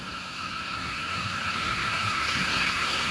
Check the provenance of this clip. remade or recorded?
remade